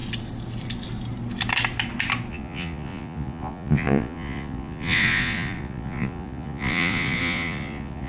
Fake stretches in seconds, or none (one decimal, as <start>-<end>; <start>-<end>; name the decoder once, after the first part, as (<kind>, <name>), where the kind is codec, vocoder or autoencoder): 2.3-8.1 (vocoder, Vocos)